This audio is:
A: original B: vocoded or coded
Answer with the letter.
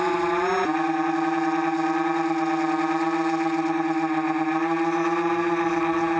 A